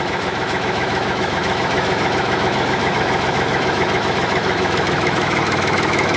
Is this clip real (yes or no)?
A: no